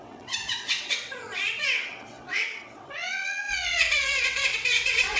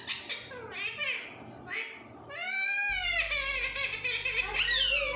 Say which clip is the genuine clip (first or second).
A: second